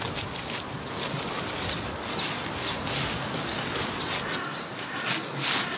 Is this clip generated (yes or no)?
no